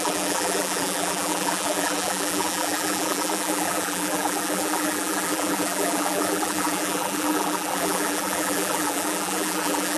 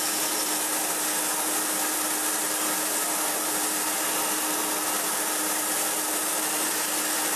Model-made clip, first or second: first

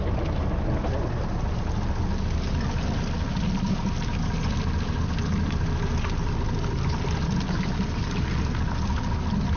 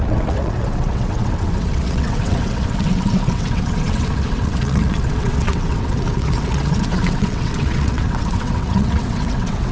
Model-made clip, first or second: second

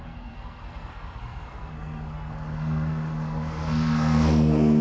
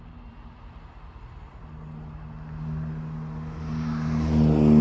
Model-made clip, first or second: first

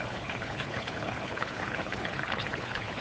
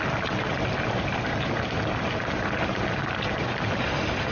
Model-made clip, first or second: first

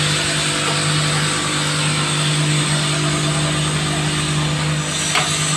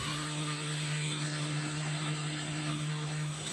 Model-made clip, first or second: second